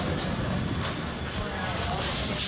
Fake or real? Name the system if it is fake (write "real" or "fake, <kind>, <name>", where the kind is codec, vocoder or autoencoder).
real